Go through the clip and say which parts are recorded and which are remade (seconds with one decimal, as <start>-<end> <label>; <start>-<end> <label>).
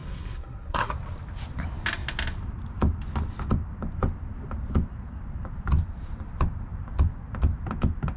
0.0-0.9 remade; 0.9-8.2 recorded